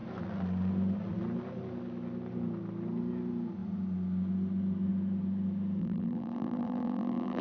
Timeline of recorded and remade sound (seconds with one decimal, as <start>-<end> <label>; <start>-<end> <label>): 0.0-5.8 recorded; 5.8-7.4 remade